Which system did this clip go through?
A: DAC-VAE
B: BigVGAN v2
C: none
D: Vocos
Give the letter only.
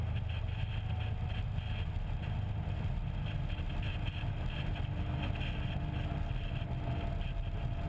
C